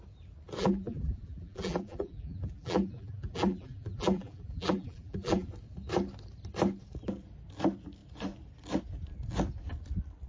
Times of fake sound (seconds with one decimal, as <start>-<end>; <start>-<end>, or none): 0.6-5.5